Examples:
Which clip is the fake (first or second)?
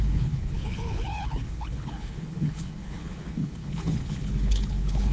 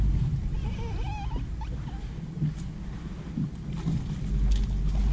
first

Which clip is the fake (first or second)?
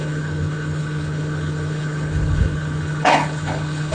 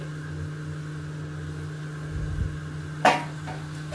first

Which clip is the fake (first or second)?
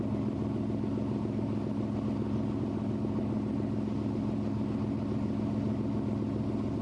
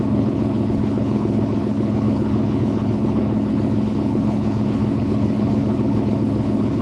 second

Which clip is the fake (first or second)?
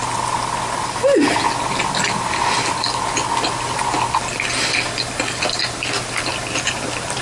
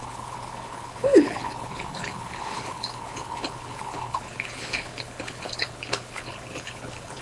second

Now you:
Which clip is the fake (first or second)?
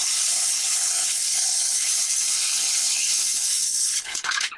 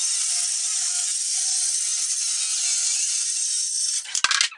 first